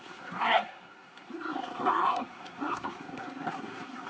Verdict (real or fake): fake